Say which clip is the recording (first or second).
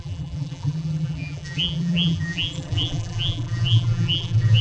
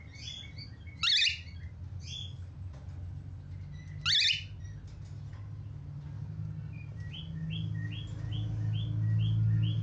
second